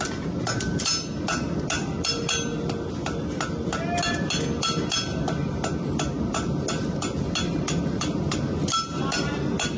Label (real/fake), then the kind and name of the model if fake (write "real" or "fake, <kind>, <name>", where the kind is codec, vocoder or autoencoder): real